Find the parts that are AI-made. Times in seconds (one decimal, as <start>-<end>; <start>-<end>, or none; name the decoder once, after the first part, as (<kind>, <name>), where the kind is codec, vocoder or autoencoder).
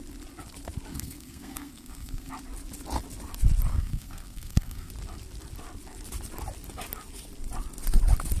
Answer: 0.9-2.3 (codec, SNAC); 3.7-4.9